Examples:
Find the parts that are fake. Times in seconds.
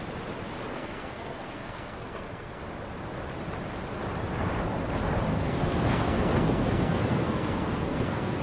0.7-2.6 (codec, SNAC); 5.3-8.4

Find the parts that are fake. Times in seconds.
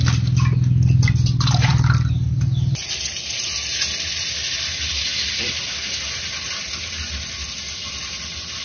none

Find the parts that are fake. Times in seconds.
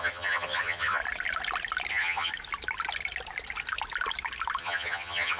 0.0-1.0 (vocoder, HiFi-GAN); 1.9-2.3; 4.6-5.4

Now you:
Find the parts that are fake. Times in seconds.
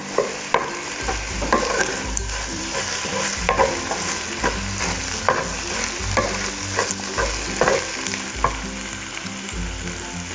0.0-3.5 (vocoder, BigVGAN v2)